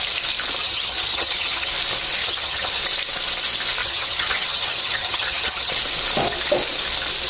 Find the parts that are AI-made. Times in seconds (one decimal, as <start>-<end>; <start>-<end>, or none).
0.6-1.7; 2.2-2.8; 3.8-5.7